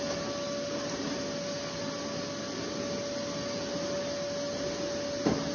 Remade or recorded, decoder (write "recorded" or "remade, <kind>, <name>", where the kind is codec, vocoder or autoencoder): recorded